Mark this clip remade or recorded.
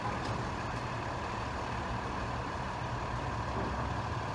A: recorded